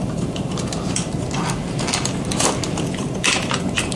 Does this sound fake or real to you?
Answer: real